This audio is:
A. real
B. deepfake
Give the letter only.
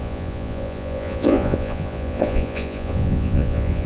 B